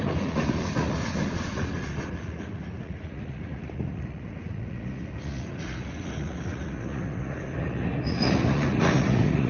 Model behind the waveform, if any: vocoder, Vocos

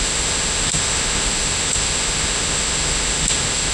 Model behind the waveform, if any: autoencoder, DAC-VAE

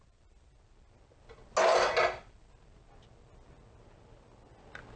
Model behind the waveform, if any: none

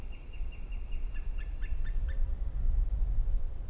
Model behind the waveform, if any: none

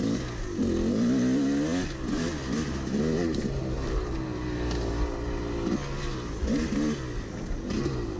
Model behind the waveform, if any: none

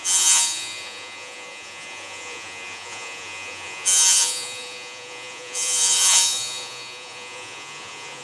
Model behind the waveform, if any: vocoder, Vocos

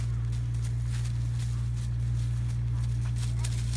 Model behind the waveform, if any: none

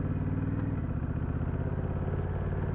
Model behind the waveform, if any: none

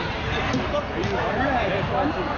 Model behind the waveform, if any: none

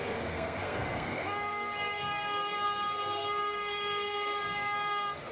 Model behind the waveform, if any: codec, SNAC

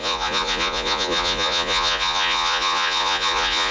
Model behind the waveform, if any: vocoder, Vocos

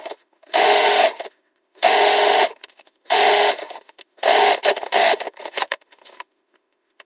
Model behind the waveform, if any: autoencoder, DAC-VAE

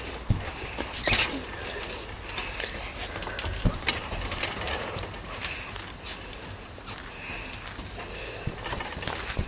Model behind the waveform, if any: none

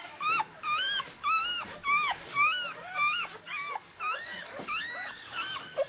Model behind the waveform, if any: codec, DAC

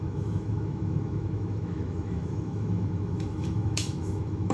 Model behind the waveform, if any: autoencoder, DAC-VAE